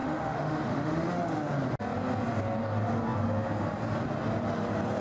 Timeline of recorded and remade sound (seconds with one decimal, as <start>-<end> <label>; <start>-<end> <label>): 0.0-1.1 remade; 1.1-5.0 recorded